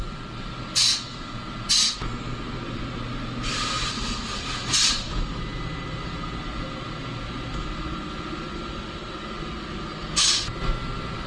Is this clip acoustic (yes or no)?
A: yes